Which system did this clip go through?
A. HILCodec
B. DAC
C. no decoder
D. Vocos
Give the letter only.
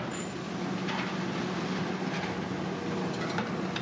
C